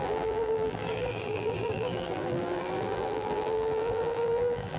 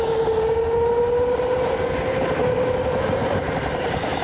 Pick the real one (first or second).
second